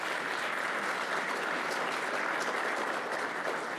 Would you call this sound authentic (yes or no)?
yes